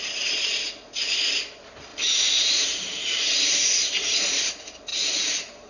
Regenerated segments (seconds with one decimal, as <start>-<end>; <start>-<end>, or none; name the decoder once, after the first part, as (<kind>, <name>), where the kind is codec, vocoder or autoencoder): 1.9-4.5 (vocoder, BigVGAN v2); 4.9-5.7